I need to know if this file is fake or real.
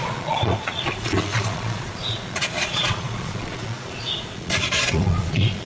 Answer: fake